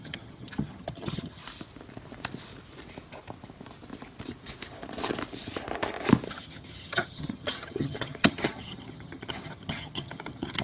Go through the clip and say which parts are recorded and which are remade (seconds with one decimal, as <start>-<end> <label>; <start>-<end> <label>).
0.0-1.4 remade; 1.4-6.3 recorded; 6.3-10.6 remade